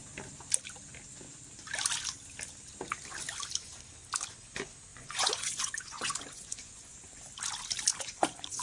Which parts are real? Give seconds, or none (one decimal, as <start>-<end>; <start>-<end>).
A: 0.0-4.9; 7.2-7.9

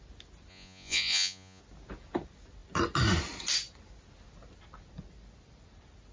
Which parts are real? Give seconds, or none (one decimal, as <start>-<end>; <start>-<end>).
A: 0.0-0.5; 1.6-6.1

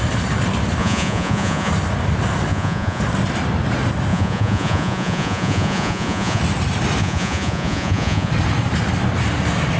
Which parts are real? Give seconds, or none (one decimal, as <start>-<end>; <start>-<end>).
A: 0.0-0.8; 1.7-2.5; 3.0-4.1; 6.4-7.0; 8.3-9.8